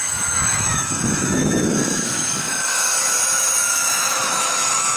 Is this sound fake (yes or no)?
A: yes